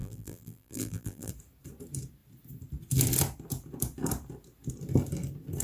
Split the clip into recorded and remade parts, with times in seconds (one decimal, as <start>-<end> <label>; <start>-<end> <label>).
0.0-1.3 remade; 1.3-5.6 recorded